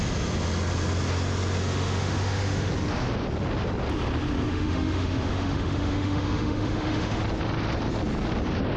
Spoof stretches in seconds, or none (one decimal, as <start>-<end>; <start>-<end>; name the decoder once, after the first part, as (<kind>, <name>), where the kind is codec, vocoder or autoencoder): 1.6-2.7 (autoencoder, DAC-VAE); 4.5-7.2